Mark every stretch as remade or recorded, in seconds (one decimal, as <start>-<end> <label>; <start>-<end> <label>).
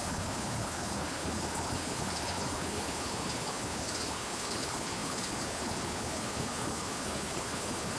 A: 0.0-8.0 remade